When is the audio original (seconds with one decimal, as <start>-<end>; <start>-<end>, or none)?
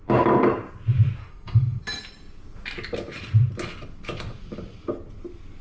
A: 0.0-1.2; 1.8-5.6